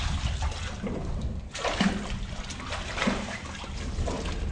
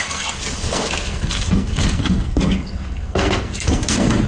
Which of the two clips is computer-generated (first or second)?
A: second